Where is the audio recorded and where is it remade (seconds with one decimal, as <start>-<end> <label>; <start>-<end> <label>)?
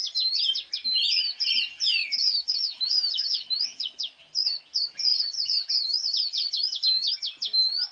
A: 0.0-2.0 recorded; 2.0-4.1 remade; 4.1-7.9 recorded